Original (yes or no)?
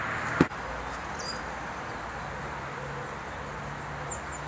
yes